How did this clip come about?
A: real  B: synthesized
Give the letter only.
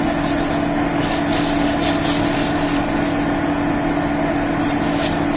A